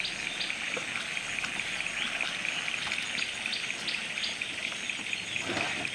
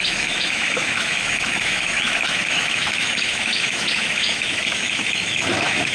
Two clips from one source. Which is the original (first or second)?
first